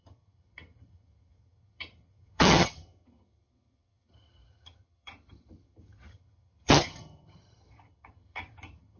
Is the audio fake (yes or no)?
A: yes